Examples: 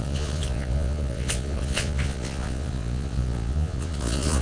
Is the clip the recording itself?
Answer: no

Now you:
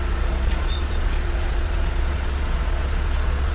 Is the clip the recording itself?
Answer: no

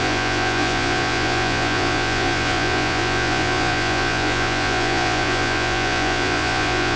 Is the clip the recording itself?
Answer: no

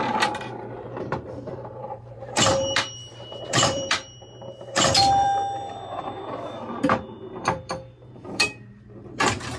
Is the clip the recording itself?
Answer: no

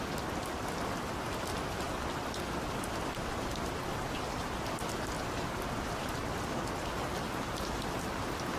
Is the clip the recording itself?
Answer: yes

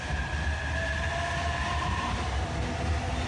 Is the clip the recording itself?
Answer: yes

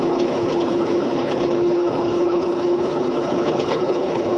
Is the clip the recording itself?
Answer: no